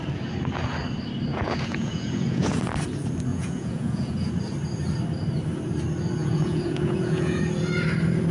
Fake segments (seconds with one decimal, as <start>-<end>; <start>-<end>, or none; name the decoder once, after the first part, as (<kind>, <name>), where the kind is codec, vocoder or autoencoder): 1.3-2.5 (vocoder, Vocos); 3.3-4.3; 6.2-7.4